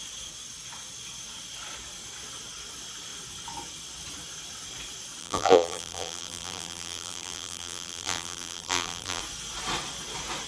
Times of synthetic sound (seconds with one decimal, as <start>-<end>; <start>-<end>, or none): 5.2-9.2

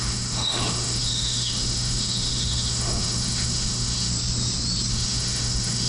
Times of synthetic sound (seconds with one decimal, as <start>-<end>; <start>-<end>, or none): 0.0-4.1; 4.9-5.9

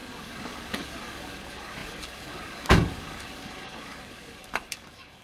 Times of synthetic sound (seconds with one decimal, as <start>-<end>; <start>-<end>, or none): 0.0-5.2

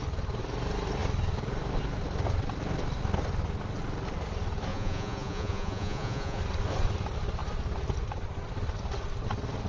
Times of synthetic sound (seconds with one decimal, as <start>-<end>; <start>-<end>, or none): 4.7-6.4